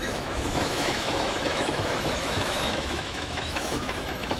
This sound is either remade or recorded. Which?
remade